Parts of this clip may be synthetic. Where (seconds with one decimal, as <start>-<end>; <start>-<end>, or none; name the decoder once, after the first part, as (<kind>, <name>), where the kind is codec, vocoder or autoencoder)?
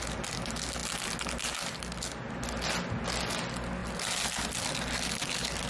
none